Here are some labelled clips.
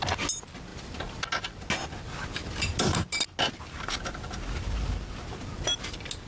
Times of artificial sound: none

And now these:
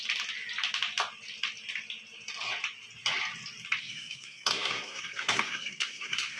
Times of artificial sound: 3.8-6.4 (codec, SNAC)